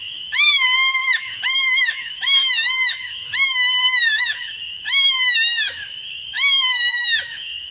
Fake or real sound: fake